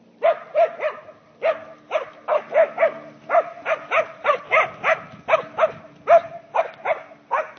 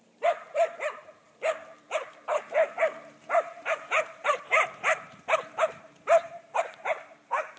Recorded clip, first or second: first